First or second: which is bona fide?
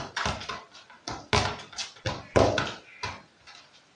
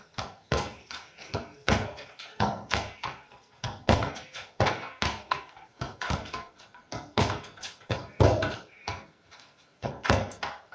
first